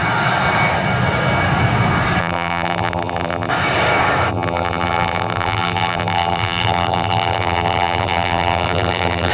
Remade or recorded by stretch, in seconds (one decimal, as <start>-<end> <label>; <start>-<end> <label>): 0.0-2.2 recorded; 2.2-3.5 remade; 3.5-4.3 recorded; 4.3-9.3 remade